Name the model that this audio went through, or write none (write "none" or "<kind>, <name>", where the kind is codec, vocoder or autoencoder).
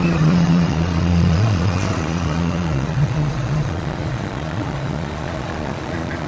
vocoder, Vocos